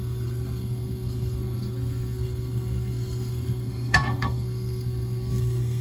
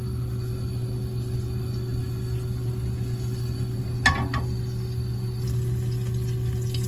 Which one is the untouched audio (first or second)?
second